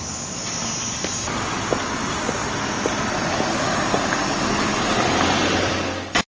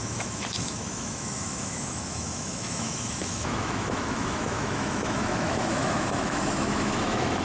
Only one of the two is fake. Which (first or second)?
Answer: second